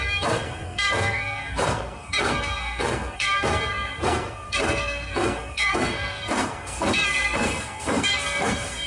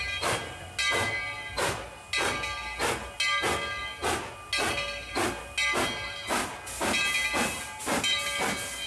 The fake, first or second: first